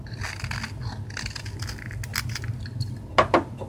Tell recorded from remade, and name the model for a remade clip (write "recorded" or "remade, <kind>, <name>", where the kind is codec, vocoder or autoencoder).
recorded